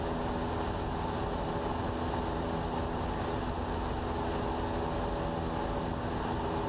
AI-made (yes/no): no